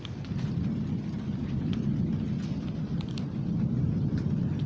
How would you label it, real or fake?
real